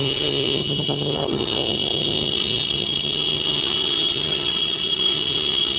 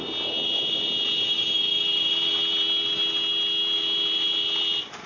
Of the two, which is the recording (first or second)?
second